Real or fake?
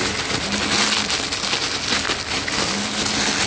real